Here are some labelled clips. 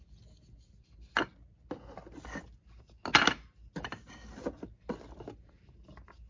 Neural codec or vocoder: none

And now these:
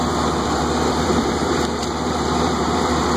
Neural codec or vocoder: vocoder, BigVGAN v2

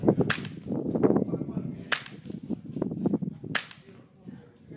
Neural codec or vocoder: none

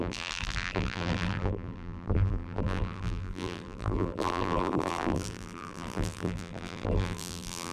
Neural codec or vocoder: vocoder, BigVGAN v2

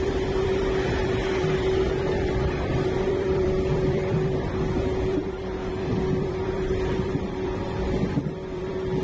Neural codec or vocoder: vocoder, BigVGAN v2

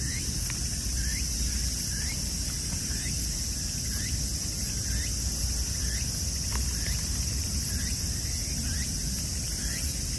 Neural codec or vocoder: none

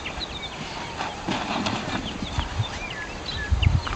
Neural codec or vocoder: vocoder, BigVGAN v2